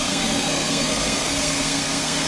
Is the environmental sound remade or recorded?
remade